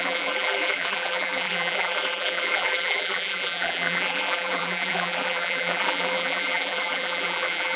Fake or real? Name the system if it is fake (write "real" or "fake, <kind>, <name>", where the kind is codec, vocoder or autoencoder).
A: fake, vocoder, BigVGAN v2